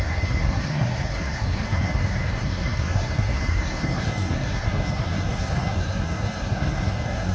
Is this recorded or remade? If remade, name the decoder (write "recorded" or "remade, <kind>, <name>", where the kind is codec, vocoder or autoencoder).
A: remade, codec, SNAC